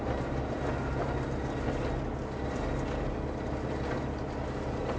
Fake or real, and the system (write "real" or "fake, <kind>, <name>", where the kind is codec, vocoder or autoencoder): real